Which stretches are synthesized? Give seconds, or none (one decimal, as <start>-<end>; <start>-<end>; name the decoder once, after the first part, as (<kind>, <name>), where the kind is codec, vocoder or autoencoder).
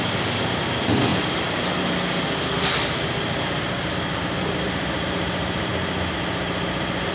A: none